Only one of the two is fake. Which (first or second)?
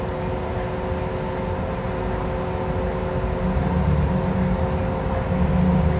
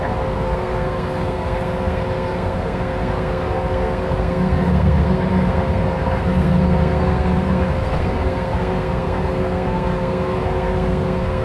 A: second